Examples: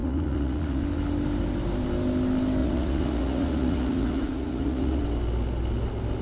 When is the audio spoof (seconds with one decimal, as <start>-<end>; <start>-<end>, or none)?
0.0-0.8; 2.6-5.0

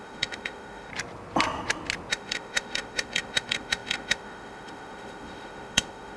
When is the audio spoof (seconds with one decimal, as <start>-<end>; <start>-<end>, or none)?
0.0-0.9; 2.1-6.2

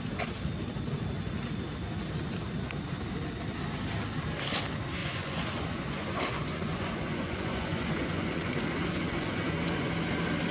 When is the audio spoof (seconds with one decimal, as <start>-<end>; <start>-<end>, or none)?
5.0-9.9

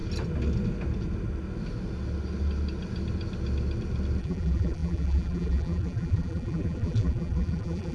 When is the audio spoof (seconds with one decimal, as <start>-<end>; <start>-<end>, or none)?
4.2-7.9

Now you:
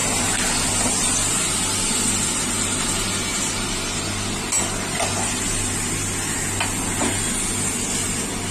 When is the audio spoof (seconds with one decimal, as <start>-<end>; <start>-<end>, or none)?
none